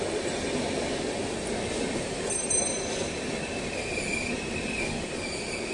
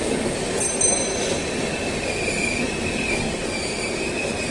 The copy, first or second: first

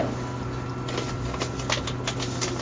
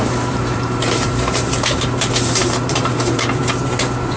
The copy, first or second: second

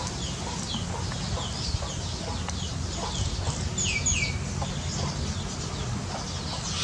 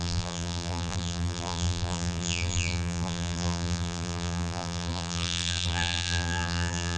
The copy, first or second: second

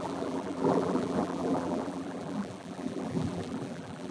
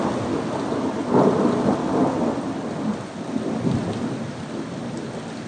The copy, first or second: first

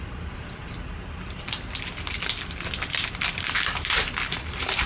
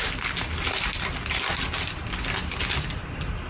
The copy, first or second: first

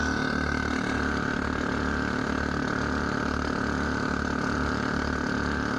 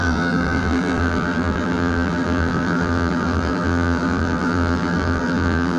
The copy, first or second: second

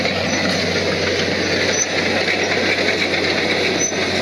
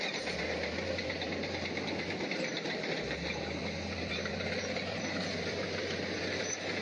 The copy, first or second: second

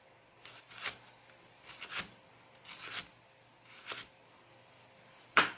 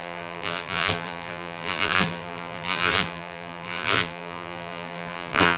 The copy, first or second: second